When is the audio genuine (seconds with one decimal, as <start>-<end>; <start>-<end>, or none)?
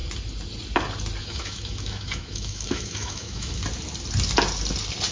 0.0-1.2; 3.6-5.1